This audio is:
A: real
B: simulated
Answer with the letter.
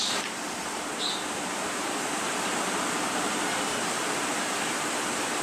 A